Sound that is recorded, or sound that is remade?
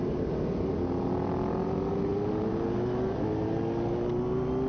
recorded